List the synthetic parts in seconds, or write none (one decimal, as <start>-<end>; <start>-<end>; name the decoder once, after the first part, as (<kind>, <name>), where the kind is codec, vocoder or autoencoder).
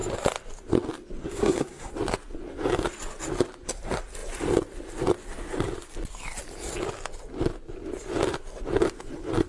1.2-1.9 (codec, SNAC)